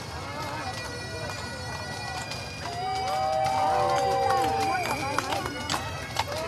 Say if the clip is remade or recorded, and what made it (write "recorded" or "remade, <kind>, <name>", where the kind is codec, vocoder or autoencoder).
recorded